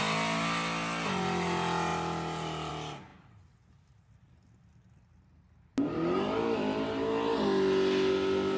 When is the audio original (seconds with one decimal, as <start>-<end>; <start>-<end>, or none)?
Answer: 0.0-8.6